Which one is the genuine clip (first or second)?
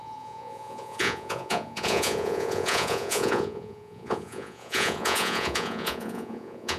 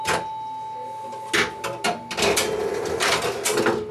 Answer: second